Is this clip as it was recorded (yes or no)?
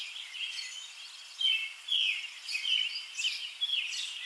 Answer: yes